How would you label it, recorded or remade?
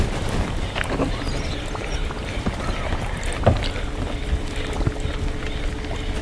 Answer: remade